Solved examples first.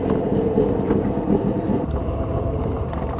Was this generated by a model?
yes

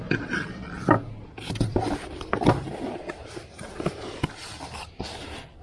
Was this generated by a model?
no